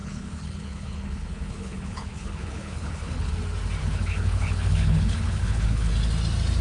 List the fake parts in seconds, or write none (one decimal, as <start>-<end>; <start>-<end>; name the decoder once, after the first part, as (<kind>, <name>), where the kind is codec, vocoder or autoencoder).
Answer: 0.0-3.3 (codec, HILCodec); 3.8-5.9